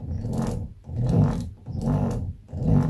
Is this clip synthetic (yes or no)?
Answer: no